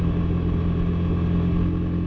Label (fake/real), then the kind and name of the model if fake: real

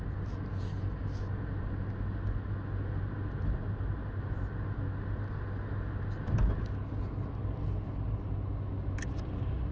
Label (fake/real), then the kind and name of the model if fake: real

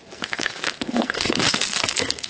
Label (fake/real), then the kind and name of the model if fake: fake, codec, SNAC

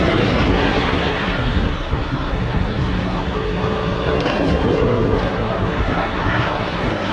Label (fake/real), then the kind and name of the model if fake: fake, codec, SNAC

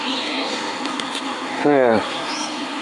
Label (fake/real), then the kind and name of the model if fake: fake, codec, SNAC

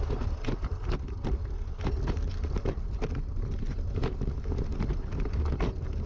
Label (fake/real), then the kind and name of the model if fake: real